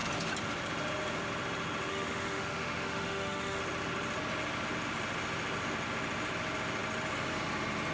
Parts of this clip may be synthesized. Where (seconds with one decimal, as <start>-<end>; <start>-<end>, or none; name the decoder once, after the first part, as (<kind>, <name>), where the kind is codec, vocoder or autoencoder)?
1.9-3.6 (autoencoder, DAC-VAE)